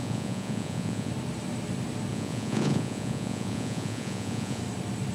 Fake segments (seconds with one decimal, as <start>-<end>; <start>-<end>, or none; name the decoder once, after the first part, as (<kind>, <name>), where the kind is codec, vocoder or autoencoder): 0.0-1.1 (vocoder, Vocos); 2.1-4.6